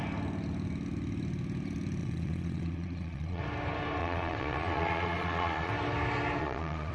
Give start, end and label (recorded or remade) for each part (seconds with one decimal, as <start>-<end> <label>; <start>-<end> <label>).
0.0-2.0 recorded; 2.0-3.4 remade; 3.4-4.0 recorded; 4.0-5.7 remade; 5.7-6.4 recorded; 6.4-6.9 remade